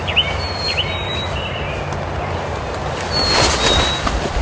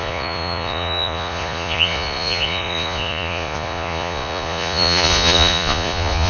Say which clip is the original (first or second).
first